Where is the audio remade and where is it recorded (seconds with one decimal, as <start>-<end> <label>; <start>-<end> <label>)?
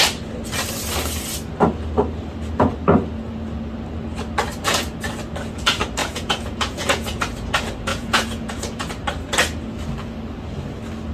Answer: 0.0-6.0 recorded; 6.0-7.2 remade; 7.2-7.9 recorded; 7.9-8.9 remade; 8.9-11.1 recorded